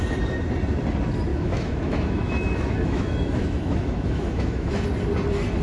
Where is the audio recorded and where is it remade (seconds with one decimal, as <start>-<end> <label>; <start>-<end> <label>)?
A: 0.0-1.3 recorded; 1.3-4.7 remade; 4.7-5.6 recorded